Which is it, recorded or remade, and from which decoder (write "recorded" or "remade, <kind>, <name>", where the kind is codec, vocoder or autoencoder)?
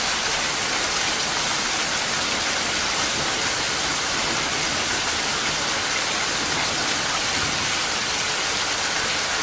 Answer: recorded